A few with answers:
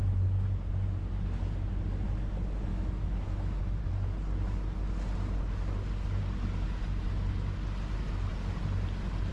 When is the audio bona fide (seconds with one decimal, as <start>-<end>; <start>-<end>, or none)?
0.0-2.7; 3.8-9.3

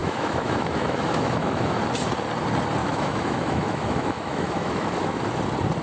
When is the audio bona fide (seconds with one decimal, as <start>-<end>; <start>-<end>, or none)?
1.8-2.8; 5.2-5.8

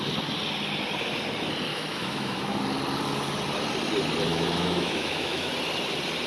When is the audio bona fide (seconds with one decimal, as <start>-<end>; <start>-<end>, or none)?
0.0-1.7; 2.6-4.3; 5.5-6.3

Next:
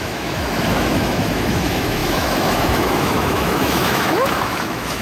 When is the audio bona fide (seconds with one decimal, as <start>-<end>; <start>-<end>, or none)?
none

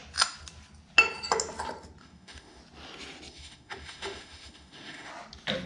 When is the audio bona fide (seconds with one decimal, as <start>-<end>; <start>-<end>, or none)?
0.0-2.0; 2.6-3.3; 5.1-5.7

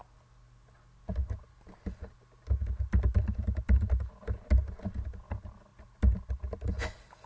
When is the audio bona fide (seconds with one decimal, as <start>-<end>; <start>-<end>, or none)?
0.0-7.3